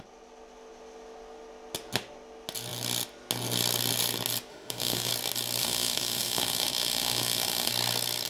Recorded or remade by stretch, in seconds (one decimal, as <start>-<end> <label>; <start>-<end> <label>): 0.0-4.5 recorded; 4.5-5.1 remade; 5.1-5.6 recorded; 5.6-7.7 remade; 7.7-8.3 recorded